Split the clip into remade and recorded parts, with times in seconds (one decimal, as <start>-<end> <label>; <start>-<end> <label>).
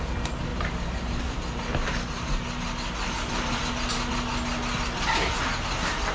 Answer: 0.0-6.1 recorded